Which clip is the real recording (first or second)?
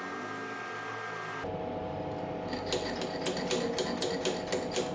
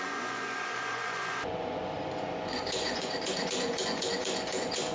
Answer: first